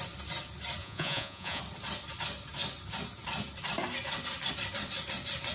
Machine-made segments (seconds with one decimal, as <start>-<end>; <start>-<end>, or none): 0.8-1.6